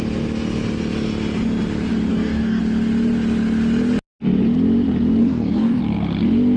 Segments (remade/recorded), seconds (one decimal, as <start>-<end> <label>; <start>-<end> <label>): 0.0-2.1 recorded; 2.1-2.6 remade; 2.6-5.2 recorded; 5.2-5.8 remade; 5.8-6.6 recorded